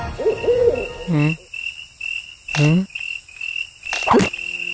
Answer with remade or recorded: recorded